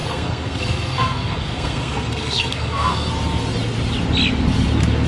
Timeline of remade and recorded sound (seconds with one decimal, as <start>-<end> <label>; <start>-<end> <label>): 0.0-3.1 remade; 3.1-5.1 recorded